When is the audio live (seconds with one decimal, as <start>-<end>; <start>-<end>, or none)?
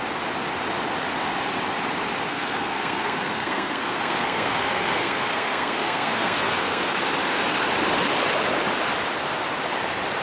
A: 0.0-2.3; 7.0-10.2